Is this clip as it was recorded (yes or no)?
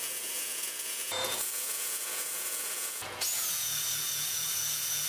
no